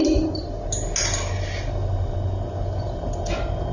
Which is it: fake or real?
real